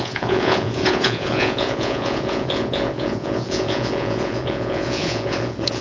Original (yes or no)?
no